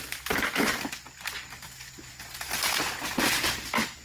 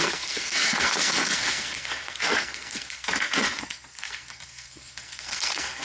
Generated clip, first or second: second